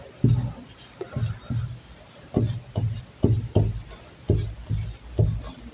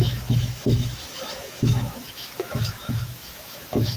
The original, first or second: first